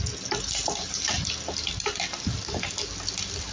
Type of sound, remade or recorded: recorded